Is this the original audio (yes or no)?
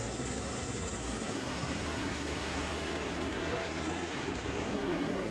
no